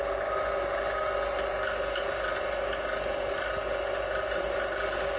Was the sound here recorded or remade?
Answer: recorded